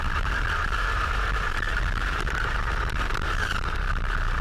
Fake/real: fake